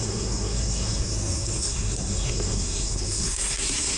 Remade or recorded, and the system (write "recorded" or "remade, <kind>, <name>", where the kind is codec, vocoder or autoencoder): remade, codec, SNAC